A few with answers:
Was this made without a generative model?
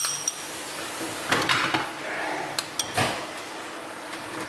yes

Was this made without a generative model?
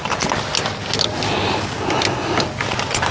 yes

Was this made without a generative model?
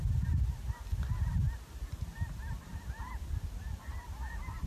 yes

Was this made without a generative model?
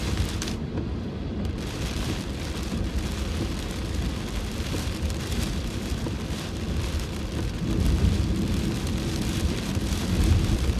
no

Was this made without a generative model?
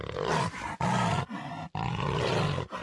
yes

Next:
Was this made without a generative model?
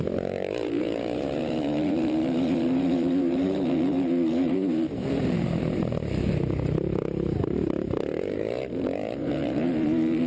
no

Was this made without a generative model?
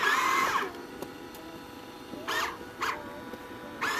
yes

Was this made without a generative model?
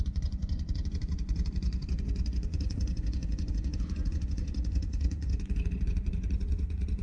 no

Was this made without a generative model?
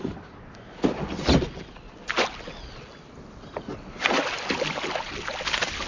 yes